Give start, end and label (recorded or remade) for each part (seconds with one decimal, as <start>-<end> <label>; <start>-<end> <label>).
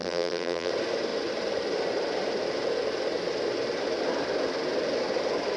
0.0-0.7 remade; 0.7-5.6 recorded